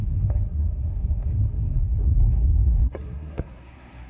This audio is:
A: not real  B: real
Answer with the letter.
A